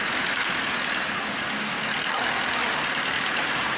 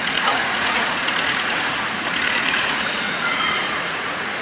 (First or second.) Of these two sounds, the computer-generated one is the second